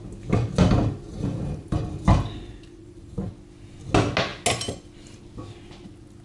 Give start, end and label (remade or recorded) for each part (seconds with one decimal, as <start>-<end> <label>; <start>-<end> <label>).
0.0-1.1 recorded; 1.1-1.8 remade; 1.8-2.8 recorded; 2.8-3.3 remade; 3.3-6.2 recorded